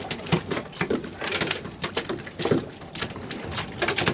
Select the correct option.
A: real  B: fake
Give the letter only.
A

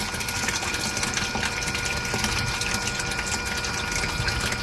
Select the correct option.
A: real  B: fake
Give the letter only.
A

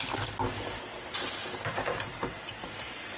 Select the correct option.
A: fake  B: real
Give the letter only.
B